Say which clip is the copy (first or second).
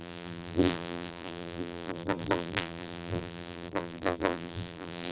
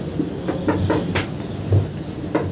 first